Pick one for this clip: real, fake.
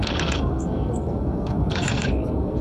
fake